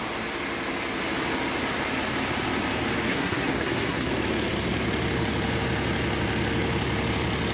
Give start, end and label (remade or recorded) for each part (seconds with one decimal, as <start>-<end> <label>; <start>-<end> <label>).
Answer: 0.0-3.1 recorded; 3.1-4.1 remade; 4.1-7.5 recorded

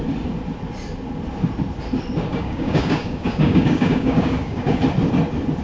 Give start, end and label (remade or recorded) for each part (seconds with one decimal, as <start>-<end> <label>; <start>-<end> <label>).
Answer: 0.0-2.3 recorded; 2.3-4.8 remade; 4.8-5.6 recorded

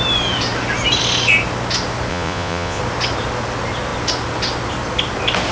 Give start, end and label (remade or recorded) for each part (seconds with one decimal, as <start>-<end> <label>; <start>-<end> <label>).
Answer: 0.0-2.1 recorded; 2.1-2.8 remade; 2.8-5.5 recorded

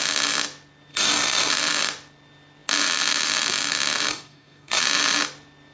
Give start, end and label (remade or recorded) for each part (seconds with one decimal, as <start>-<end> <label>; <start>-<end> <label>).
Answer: 0.0-0.9 recorded; 0.9-1.5 remade; 1.5-4.1 recorded; 4.1-4.8 remade; 4.8-5.7 recorded

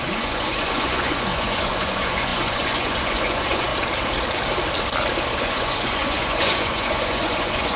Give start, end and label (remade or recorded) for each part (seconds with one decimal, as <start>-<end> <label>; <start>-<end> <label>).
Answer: 0.0-3.7 remade; 3.7-5.4 recorded; 5.4-7.8 remade